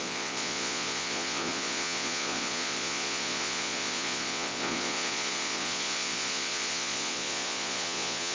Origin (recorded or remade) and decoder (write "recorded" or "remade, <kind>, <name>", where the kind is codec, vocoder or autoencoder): remade, vocoder, Vocos